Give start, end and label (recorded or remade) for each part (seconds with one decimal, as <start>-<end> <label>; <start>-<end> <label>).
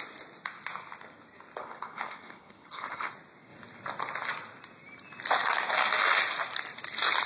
0.0-1.6 recorded; 1.6-3.1 remade; 3.1-7.3 recorded